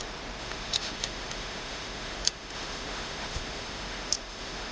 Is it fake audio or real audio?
fake